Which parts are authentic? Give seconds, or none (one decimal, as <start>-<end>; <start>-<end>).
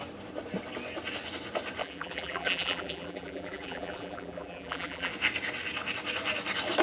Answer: 0.0-1.8; 5.1-6.8